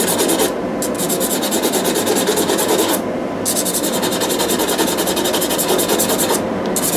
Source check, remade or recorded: recorded